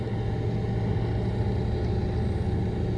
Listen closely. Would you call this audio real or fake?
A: real